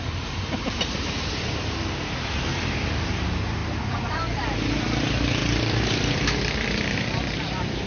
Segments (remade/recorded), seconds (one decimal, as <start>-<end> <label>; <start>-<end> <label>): 0.0-3.6 remade; 3.6-5.0 recorded; 5.0-7.9 remade

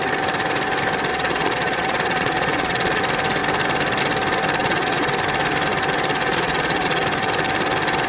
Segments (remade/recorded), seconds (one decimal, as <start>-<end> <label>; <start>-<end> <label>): 0.0-1.1 recorded; 1.1-3.0 remade; 3.0-4.6 recorded; 4.6-5.1 remade; 5.1-6.3 recorded; 6.3-7.0 remade; 7.0-8.1 recorded

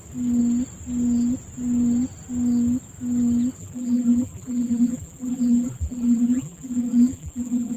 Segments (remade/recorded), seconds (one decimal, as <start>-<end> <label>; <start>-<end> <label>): 0.0-3.6 recorded; 3.6-7.8 remade

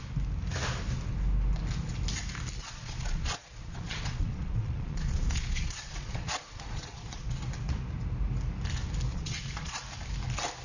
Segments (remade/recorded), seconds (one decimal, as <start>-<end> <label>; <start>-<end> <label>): 0.0-2.6 recorded; 2.6-7.4 remade; 7.4-9.1 recorded; 9.1-9.8 remade; 9.8-10.6 recorded